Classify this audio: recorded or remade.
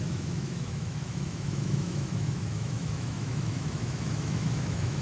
remade